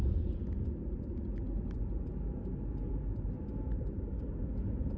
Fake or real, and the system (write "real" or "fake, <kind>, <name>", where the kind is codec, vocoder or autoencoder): real